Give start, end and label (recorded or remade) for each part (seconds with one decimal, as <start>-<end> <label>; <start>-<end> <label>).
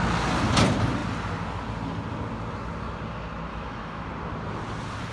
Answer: 0.0-3.5 recorded; 3.5-4.1 remade; 4.1-5.1 recorded